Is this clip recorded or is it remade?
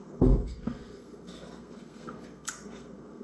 remade